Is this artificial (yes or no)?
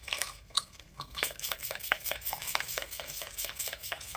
yes